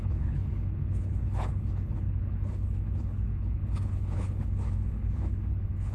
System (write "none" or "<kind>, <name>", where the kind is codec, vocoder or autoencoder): codec, HILCodec